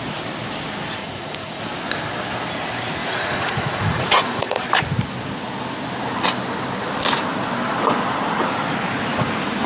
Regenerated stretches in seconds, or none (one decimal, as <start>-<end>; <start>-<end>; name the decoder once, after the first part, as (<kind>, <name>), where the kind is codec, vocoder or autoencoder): 1.0-1.6 (vocoder, Vocos); 3.0-4.6